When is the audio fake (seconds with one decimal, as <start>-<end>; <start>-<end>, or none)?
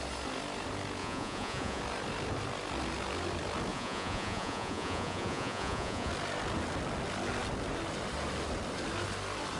1.0-1.8; 3.7-6.1